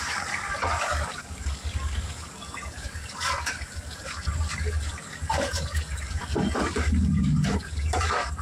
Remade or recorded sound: remade